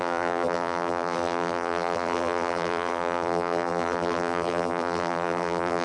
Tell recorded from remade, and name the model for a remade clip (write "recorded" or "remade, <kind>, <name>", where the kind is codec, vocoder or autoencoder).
remade, vocoder, BigVGAN v2